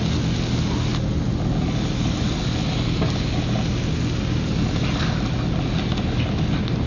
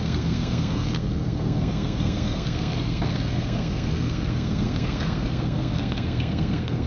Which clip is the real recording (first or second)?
first